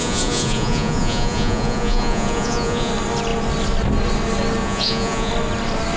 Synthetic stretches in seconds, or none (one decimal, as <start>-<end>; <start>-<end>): 0.0-2.9; 4.6-5.3